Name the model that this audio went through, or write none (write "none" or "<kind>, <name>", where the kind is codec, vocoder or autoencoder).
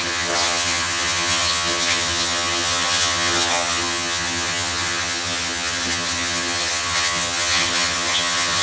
vocoder, HiFi-GAN